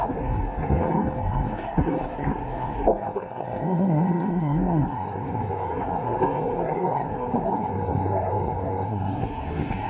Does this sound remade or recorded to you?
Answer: remade